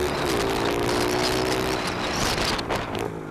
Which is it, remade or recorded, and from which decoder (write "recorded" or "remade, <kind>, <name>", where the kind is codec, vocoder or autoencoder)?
recorded